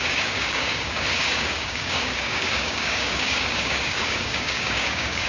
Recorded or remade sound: remade